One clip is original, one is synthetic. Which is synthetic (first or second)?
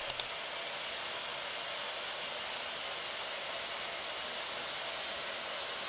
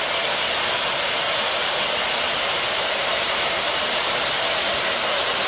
second